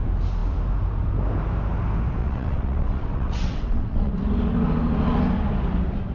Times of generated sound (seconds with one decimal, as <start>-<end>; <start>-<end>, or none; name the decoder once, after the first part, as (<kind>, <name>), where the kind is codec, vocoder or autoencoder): 2.2-4.1 (vocoder, WaveNeXt)